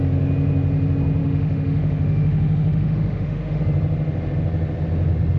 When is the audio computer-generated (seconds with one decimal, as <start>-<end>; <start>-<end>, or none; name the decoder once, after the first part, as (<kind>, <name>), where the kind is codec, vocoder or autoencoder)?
1.2-3.6 (autoencoder, DAC-VAE)